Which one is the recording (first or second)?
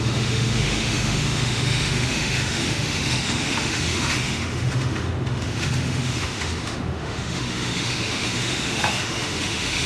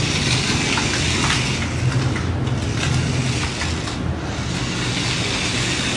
second